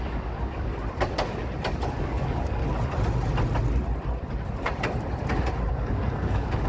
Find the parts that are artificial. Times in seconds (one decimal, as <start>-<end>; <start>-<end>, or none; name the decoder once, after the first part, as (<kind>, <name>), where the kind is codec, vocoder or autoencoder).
0.0-0.7 (codec, DAC); 2.0-2.6; 5.7-6.7